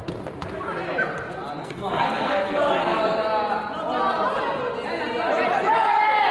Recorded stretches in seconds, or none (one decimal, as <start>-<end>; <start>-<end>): 0.0-1.6; 2.7-6.3